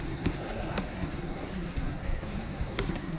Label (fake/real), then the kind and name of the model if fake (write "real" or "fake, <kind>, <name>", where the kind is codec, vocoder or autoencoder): fake, codec, SNAC